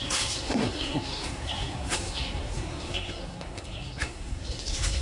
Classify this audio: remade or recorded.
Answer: remade